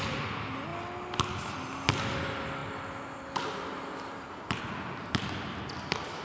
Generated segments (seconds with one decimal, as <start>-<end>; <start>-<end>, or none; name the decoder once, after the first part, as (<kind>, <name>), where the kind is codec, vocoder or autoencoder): none

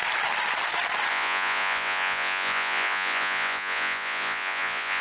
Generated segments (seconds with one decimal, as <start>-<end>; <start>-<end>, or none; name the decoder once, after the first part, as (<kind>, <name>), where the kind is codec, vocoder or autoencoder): 1.1-5.0 (vocoder, Vocos)

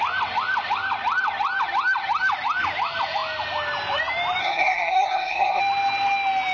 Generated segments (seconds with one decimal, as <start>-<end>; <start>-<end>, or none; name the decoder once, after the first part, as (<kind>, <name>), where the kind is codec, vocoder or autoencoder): 4.4-5.6 (codec, SNAC)

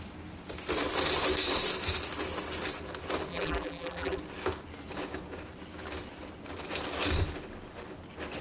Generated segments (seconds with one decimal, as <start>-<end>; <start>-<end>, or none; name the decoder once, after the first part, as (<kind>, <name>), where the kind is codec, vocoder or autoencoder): 3.3-4.2 (vocoder, BigVGAN v2)